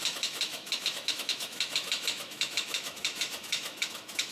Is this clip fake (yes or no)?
yes